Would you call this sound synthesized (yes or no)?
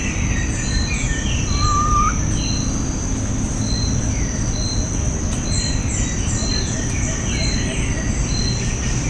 no